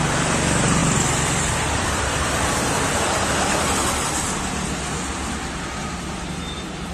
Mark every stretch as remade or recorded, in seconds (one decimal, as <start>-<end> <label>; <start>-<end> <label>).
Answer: 0.0-0.8 recorded; 0.8-3.7 remade; 3.7-6.9 recorded

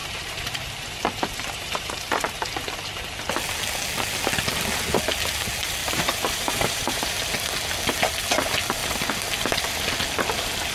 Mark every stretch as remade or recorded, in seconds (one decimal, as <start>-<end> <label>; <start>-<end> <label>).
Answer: 0.0-1.9 remade; 1.9-5.8 recorded; 5.8-7.2 remade; 7.2-10.7 recorded

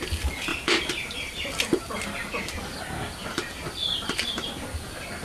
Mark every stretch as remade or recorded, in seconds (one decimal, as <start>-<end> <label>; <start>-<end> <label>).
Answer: 0.0-0.5 recorded; 0.5-1.8 remade; 1.8-3.2 recorded; 3.2-4.5 remade; 4.5-5.2 recorded

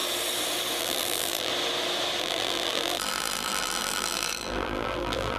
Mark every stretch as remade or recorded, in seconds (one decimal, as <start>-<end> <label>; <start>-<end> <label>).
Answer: 0.0-0.8 recorded; 0.8-1.5 remade; 1.5-2.2 recorded; 2.2-5.4 remade

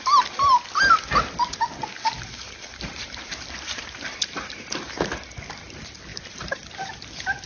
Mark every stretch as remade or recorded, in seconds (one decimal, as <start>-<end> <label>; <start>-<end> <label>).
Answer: 0.0-1.9 recorded; 1.9-5.1 remade; 5.1-6.1 recorded; 6.1-6.7 remade; 6.7-7.5 recorded

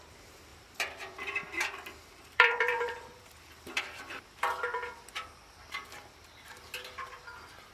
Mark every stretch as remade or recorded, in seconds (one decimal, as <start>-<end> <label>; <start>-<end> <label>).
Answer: 0.0-7.7 remade

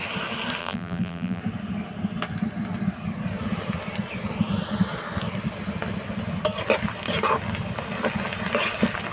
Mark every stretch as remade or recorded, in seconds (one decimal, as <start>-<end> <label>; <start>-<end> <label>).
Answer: 0.0-0.6 recorded; 0.6-1.4 remade; 1.4-9.1 recorded

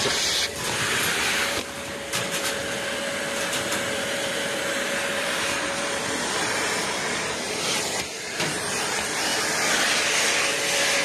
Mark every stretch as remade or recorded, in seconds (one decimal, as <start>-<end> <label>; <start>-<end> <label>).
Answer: 0.0-2.6 remade; 2.6-3.2 recorded; 3.2-9.3 remade; 9.3-9.8 recorded; 9.8-11.0 remade